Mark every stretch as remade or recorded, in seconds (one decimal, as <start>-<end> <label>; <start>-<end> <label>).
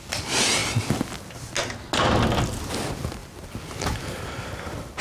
0.0-5.0 recorded